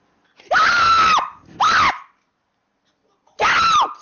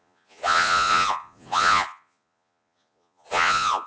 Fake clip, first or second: second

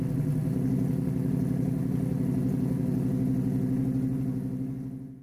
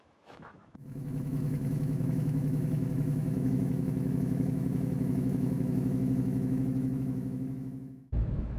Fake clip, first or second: second